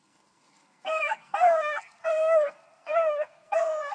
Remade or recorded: remade